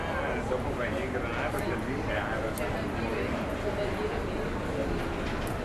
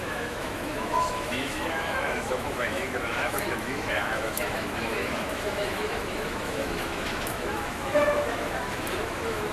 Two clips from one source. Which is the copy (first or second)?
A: second